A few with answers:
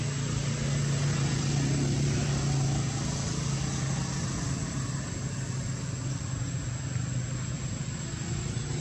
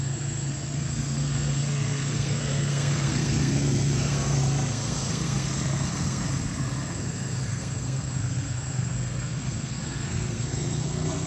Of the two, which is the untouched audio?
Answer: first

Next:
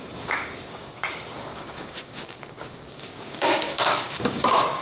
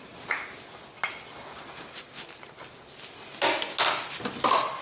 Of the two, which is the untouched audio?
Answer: second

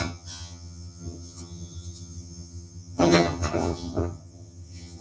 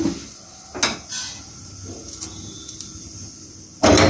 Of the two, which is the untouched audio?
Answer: second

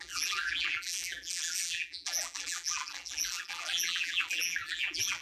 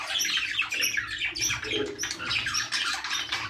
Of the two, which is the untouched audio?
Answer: second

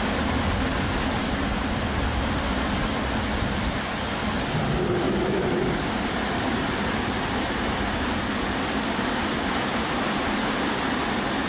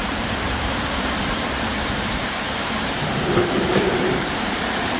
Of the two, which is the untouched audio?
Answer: first